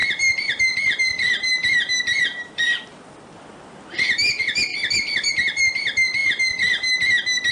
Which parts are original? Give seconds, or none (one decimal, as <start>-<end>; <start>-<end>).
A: 3.5-4.7; 5.3-7.5